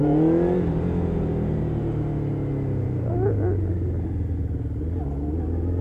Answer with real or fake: real